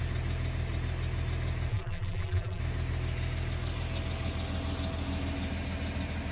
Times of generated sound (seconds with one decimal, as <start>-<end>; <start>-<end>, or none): 1.7-2.6